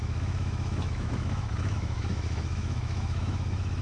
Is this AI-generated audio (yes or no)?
yes